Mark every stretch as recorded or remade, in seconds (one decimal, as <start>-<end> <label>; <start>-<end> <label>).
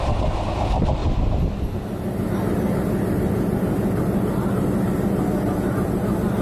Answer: 0.0-6.4 recorded